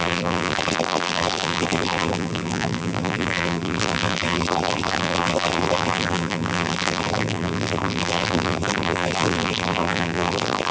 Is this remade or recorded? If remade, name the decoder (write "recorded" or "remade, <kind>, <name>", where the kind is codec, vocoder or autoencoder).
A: remade, vocoder, BigVGAN v2